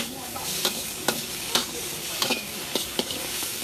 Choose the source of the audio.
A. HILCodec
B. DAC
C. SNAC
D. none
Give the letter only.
B